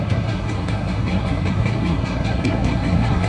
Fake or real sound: fake